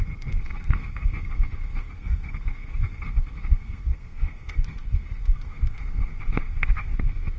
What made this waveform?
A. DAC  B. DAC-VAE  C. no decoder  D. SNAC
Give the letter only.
D